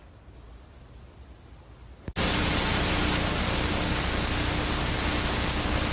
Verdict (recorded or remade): recorded